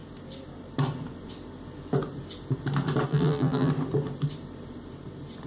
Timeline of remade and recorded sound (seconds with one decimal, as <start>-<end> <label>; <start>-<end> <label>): 0.0-3.1 recorded; 3.1-3.7 remade; 3.7-5.5 recorded